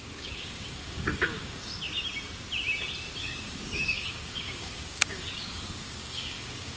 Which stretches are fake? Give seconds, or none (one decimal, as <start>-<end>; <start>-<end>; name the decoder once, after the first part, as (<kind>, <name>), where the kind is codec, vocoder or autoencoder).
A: 0.0-1.7 (codec, DAC); 3.2-6.8